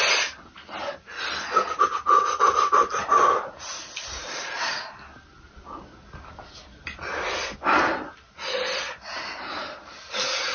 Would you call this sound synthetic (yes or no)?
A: no